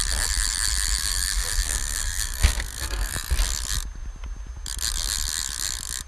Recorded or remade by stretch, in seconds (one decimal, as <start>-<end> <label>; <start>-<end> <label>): 0.0-1.0 recorded; 1.0-3.1 remade; 3.1-6.1 recorded